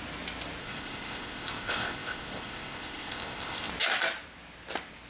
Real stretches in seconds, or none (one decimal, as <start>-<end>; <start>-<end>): 0.0-0.6; 3.7-5.1